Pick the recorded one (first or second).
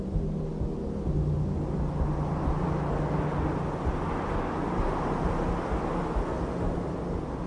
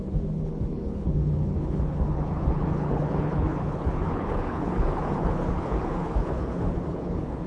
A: first